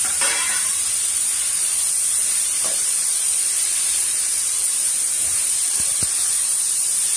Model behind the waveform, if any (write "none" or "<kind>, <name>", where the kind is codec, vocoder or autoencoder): vocoder, BigVGAN v2